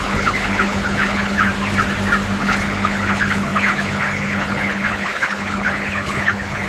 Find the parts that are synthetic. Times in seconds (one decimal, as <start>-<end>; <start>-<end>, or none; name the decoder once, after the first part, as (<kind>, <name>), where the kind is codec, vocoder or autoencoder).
0.0-1.5 (codec, HILCodec); 2.4-6.7